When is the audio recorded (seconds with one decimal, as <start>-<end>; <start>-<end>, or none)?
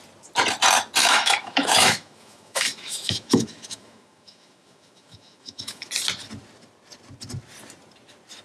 0.0-1.0; 5.9-8.4